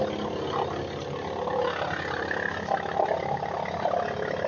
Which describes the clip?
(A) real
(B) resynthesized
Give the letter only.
A